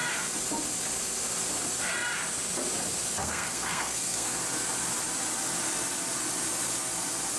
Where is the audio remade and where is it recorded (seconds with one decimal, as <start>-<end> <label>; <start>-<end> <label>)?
0.0-3.2 recorded; 3.2-4.4 remade; 4.4-7.4 recorded